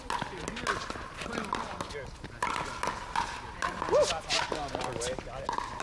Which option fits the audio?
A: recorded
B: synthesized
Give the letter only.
A